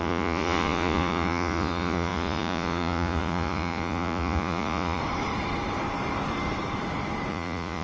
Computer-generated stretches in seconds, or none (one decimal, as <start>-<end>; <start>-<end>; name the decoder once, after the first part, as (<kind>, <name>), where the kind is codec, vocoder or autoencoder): 0.0-5.0 (vocoder, Vocos); 7.3-7.8